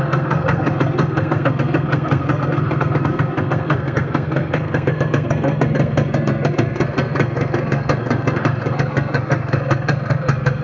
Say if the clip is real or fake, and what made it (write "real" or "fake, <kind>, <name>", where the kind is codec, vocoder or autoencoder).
fake, codec, SNAC